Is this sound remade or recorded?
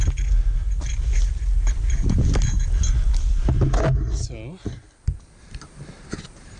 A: recorded